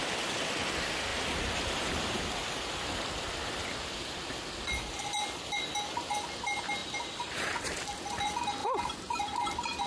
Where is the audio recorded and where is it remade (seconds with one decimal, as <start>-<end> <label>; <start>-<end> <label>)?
0.0-1.1 recorded; 1.1-2.2 remade; 2.2-6.8 recorded; 6.8-7.8 remade; 7.8-8.6 recorded; 8.6-9.9 remade

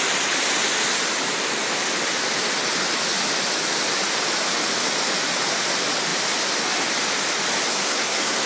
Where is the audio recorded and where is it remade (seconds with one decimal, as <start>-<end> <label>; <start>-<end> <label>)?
0.0-7.7 recorded; 7.7-8.5 remade

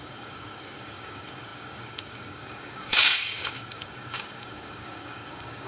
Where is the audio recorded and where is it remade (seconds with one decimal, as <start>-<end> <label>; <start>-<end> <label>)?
0.0-5.7 remade

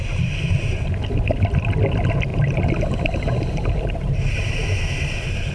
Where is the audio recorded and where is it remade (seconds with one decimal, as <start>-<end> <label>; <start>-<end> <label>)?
0.0-2.3 recorded; 2.3-4.5 remade; 4.5-5.5 recorded

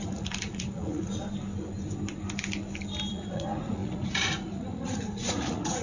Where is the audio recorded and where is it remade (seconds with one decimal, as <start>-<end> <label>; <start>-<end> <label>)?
0.0-1.2 remade; 1.2-3.1 recorded; 3.1-5.8 remade